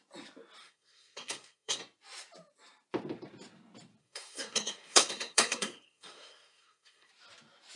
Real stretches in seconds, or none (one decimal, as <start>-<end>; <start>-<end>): 0.0-0.6; 1.8-4.0; 7.1-7.8